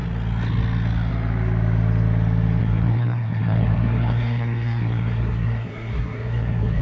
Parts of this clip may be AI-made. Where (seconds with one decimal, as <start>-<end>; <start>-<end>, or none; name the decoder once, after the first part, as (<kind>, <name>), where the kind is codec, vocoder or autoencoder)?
2.6-6.8 (codec, SNAC)